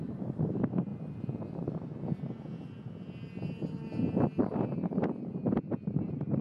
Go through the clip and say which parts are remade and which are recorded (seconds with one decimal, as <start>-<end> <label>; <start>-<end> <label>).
0.0-0.9 remade; 0.9-4.4 recorded; 4.4-5.3 remade; 5.3-5.9 recorded; 5.9-6.4 remade